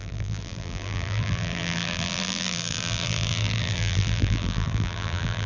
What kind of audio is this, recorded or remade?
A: remade